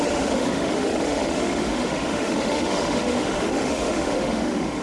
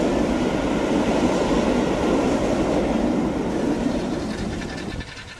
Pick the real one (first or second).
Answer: second